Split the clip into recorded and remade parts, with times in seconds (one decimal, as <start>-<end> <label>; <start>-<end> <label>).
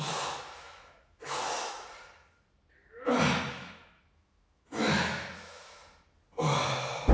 0.0-1.4 remade; 1.4-3.5 recorded; 3.5-5.8 remade; 5.8-7.1 recorded